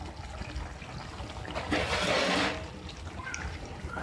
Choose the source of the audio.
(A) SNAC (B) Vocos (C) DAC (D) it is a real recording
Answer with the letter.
D